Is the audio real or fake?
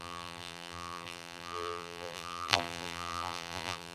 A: fake